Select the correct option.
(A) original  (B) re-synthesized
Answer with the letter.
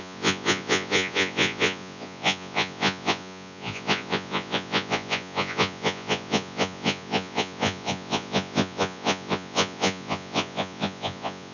B